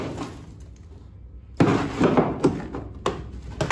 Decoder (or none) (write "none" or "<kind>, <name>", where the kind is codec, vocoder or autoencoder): none